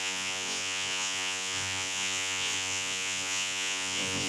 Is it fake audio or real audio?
fake